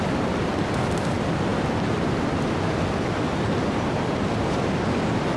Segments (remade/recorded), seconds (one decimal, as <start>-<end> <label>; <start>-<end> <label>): 0.0-5.4 recorded